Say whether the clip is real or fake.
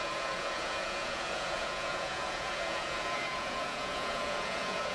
fake